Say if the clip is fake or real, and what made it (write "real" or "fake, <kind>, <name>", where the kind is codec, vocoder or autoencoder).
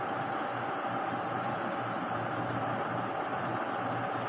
real